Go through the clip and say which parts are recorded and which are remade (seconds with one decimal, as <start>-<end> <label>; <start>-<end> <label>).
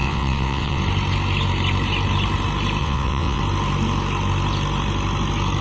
0.0-0.8 remade; 0.8-2.8 recorded; 2.8-3.4 remade; 3.4-5.6 recorded